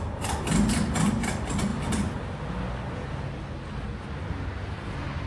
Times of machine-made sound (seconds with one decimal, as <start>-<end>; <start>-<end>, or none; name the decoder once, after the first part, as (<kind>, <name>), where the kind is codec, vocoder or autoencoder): none

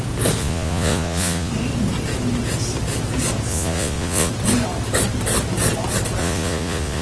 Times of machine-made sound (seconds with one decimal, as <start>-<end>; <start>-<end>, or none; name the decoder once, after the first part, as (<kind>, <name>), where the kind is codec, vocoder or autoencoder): 0.4-1.5 (vocoder, Vocos); 3.5-4.3; 6.2-7.0